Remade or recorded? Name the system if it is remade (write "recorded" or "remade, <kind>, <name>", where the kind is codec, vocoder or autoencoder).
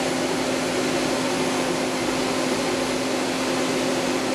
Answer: recorded